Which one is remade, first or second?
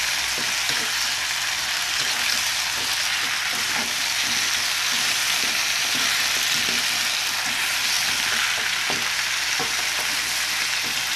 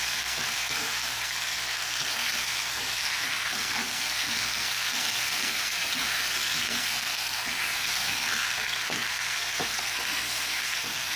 second